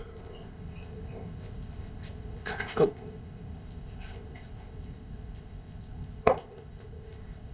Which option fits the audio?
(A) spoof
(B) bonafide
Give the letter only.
A